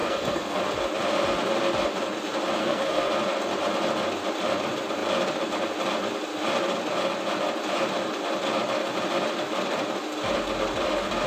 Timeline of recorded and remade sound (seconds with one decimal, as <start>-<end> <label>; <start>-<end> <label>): 0.0-0.6 remade; 0.6-2.6 recorded; 2.6-3.1 remade; 3.1-11.3 recorded